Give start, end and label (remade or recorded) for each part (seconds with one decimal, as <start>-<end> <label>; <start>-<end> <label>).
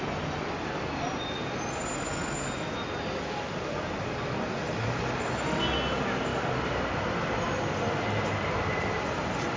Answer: 0.0-6.3 recorded; 6.3-9.6 remade